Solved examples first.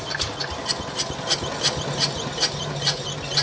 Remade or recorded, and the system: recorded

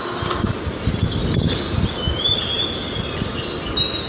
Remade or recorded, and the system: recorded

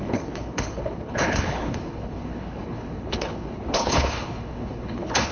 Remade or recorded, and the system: remade, codec, HILCodec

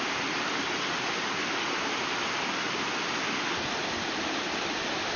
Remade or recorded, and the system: recorded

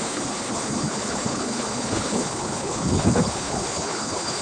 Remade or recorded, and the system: remade, codec, HILCodec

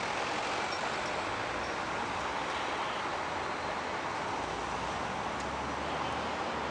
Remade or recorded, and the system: recorded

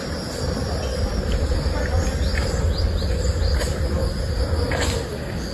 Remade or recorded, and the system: recorded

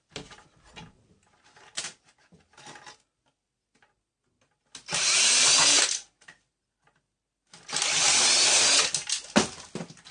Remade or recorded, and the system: recorded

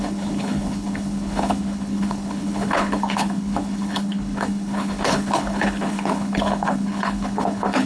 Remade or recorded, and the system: remade, codec, HILCodec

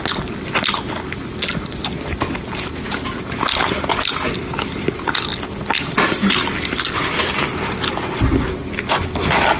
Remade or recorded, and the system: recorded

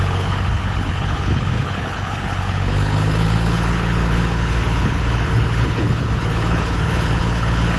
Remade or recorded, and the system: remade, codec, HILCodec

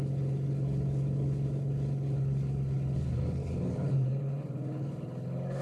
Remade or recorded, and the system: remade, codec, HILCodec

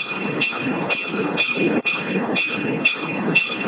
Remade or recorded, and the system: remade, codec, HILCodec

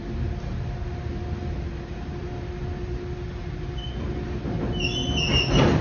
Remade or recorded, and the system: recorded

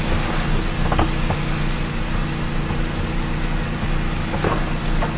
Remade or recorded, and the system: recorded